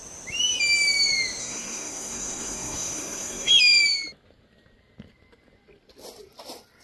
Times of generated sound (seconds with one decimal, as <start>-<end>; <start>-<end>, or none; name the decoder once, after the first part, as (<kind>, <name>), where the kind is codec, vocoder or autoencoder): 1.4-3.5 (codec, SNAC)